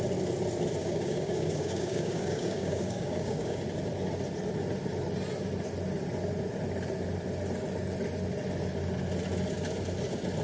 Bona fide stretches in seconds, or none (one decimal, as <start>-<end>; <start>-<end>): 0.0-0.8; 3.6-10.4